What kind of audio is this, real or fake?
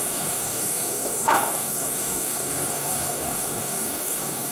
fake